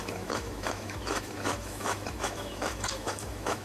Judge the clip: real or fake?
fake